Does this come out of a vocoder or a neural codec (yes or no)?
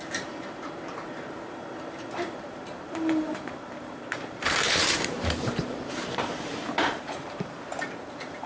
yes